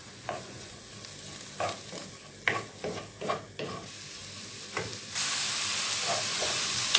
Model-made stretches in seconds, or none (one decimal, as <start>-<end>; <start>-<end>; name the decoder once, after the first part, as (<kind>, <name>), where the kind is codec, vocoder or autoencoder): 0.0-0.8 (vocoder, Vocos); 6.3-7.0